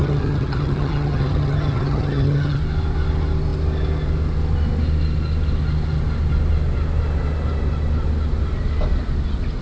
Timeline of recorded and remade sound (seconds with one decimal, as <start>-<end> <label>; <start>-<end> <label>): 0.0-2.6 remade; 2.6-9.6 recorded